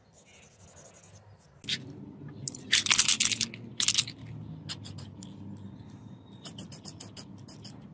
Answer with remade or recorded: recorded